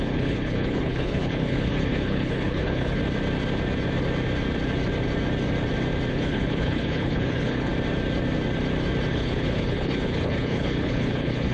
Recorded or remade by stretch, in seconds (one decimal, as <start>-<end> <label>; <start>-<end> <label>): 0.0-3.0 remade; 3.0-6.1 recorded; 6.1-7.7 remade; 7.7-9.1 recorded; 9.1-11.5 remade